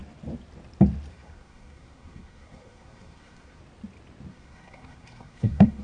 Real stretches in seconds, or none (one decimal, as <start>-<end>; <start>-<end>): 0.0-1.1; 3.6-4.3